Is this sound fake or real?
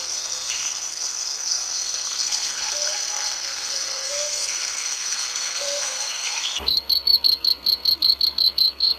fake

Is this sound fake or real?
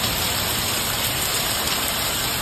fake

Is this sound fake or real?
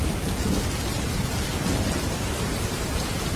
real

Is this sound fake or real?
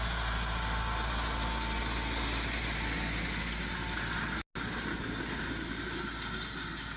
real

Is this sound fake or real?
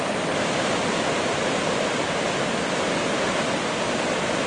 real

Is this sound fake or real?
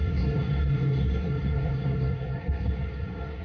fake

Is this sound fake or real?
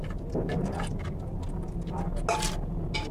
real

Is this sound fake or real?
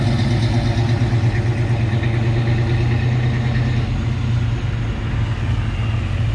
real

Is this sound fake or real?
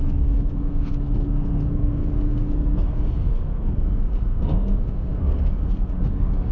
fake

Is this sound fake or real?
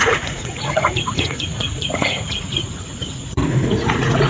fake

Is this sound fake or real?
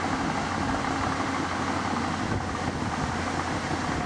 real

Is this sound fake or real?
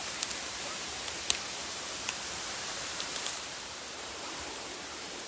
fake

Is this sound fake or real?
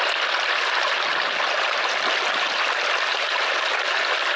real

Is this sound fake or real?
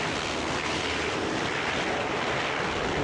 real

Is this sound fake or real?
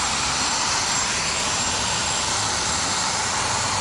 fake